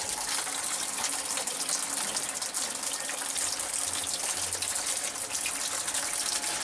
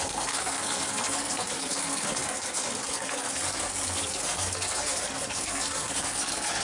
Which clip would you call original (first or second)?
first